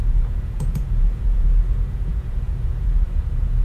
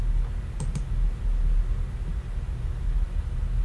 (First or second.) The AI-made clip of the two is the first